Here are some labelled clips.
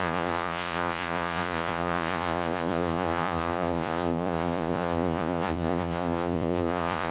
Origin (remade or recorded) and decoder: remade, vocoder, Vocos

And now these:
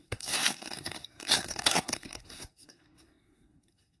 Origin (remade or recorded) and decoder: remade, codec, SNAC